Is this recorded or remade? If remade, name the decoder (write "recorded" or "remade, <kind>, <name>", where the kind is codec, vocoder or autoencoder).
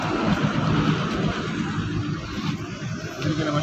recorded